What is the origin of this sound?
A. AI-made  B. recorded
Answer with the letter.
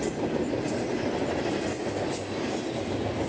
B